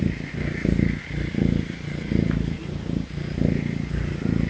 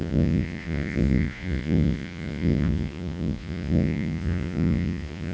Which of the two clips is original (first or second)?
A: first